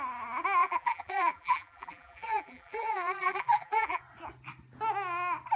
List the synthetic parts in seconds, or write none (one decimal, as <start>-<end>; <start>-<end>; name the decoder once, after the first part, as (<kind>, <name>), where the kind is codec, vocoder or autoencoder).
0.6-4.0 (vocoder, BigVGAN v2)

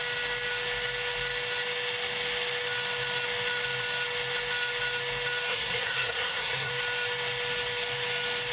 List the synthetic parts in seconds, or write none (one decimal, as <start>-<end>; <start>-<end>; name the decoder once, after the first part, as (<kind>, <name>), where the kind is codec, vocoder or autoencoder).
5.5-6.7 (codec, SNAC)

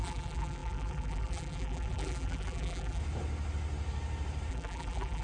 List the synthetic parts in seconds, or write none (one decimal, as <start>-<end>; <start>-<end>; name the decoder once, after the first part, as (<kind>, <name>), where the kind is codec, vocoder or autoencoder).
0.0-3.0 (vocoder, BigVGAN v2); 4.5-5.2

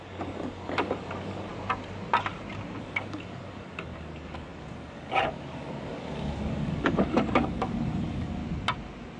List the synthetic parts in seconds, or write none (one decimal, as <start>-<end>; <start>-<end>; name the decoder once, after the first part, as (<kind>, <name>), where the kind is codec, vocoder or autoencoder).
0.0-1.5 (codec, DAC); 2.8-8.4